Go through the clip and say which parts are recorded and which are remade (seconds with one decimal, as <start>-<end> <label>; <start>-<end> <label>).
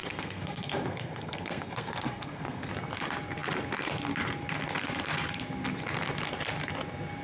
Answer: 0.0-2.7 remade; 2.7-7.2 recorded